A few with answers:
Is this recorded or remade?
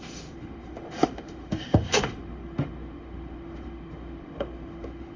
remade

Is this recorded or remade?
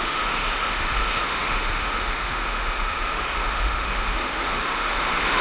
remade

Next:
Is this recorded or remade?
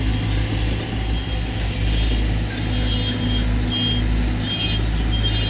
recorded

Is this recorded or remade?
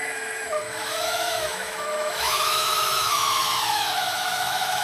remade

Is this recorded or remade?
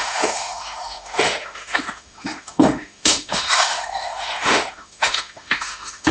remade